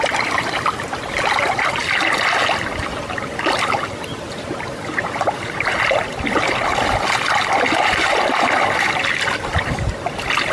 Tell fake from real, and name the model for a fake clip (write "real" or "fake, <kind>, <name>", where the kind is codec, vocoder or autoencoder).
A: real